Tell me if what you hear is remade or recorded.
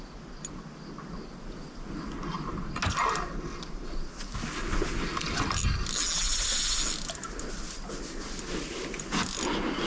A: recorded